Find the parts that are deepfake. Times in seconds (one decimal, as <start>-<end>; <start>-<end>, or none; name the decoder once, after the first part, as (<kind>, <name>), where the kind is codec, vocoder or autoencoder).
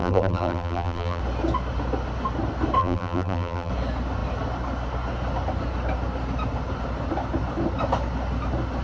0.0-1.2 (vocoder, BigVGAN v2); 2.8-3.7